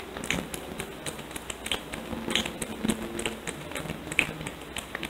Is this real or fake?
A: real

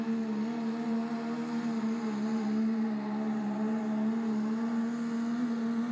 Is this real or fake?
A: real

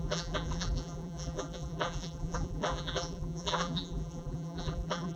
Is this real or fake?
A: fake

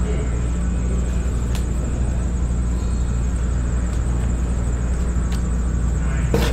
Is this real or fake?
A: real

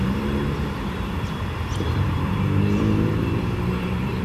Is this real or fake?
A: fake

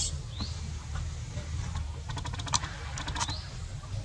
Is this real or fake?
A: real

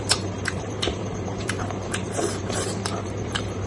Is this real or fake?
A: fake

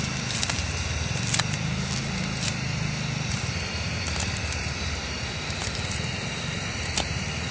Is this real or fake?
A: real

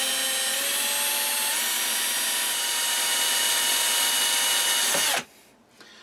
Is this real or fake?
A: real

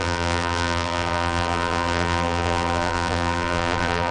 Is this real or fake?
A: fake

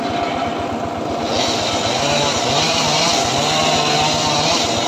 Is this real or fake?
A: real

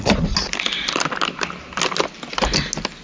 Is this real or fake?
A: real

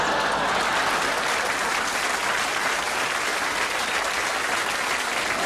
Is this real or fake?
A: real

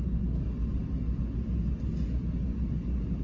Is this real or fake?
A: real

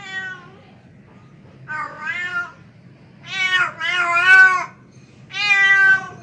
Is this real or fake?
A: real